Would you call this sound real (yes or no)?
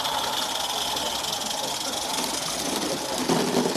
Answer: yes